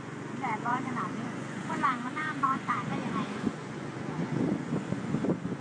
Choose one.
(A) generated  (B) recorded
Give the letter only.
A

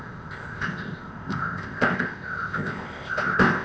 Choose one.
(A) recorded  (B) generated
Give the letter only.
B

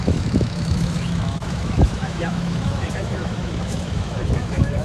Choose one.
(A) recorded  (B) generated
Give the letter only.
B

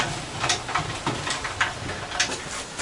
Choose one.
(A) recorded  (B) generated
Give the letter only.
A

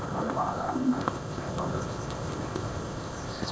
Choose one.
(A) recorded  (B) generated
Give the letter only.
B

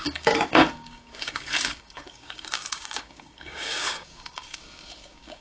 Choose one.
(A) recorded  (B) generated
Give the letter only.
B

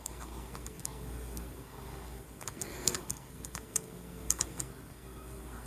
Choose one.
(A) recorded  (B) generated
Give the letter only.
B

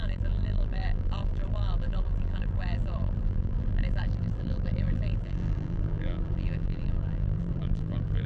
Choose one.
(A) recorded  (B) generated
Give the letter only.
B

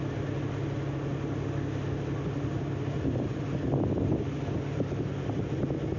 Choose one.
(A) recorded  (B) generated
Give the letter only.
A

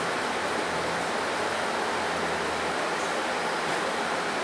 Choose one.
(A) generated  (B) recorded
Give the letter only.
B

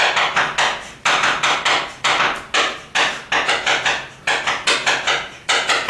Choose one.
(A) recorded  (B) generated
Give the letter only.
A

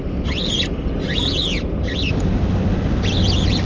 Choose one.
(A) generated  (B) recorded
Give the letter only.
B